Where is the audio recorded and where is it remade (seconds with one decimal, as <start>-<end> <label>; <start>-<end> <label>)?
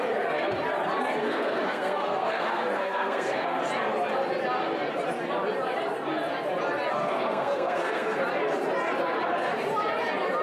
0.0-1.2 recorded; 1.2-3.6 remade; 3.6-7.0 recorded; 7.0-8.2 remade; 8.2-10.4 recorded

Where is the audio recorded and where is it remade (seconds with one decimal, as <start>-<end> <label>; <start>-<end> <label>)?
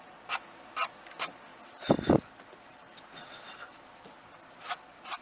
0.0-5.2 recorded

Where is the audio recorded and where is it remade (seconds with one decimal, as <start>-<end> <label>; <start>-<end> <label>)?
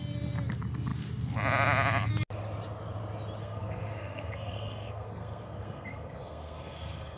0.0-3.4 recorded; 3.4-7.2 remade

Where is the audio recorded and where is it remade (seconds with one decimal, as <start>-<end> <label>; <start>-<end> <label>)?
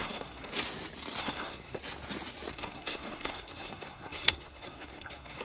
0.0-0.5 remade; 0.5-1.2 recorded; 1.2-1.8 remade; 1.8-2.5 recorded; 2.5-5.4 remade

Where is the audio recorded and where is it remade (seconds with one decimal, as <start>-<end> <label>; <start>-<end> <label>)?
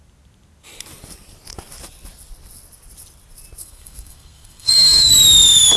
0.0-3.6 recorded; 3.6-5.1 remade; 5.1-5.8 recorded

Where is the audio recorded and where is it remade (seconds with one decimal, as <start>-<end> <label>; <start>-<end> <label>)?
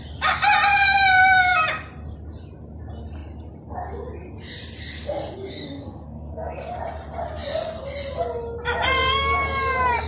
0.0-5.5 recorded; 5.5-6.7 remade; 6.7-10.1 recorded